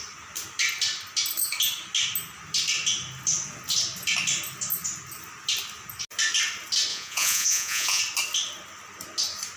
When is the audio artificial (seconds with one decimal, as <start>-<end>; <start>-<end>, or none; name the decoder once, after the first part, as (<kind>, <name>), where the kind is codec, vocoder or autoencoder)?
6.9-8.0 (vocoder, Vocos)